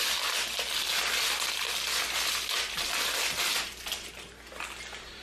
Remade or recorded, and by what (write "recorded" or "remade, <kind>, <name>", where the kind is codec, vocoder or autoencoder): recorded